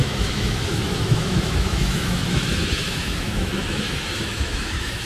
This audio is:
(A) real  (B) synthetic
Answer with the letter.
B